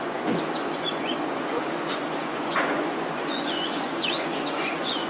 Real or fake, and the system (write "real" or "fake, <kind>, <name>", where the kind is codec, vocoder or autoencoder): fake, vocoder, Vocos